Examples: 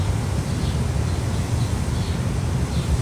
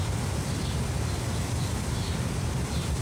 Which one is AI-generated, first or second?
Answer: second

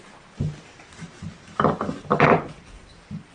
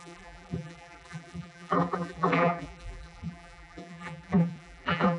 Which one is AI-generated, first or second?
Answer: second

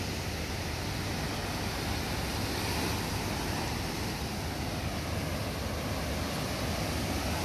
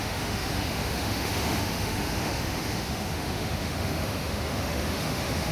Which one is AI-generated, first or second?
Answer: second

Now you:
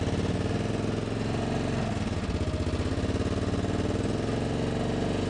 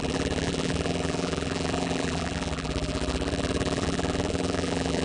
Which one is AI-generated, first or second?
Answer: second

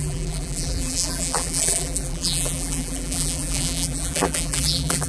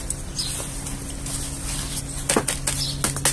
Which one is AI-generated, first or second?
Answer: first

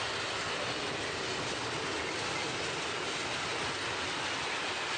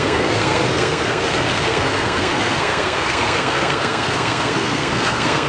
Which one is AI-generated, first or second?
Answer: second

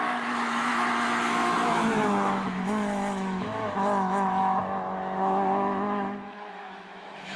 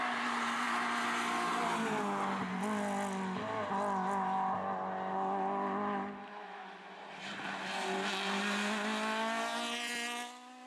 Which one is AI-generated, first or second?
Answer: first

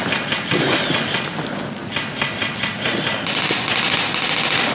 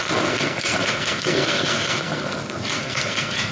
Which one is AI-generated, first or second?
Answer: second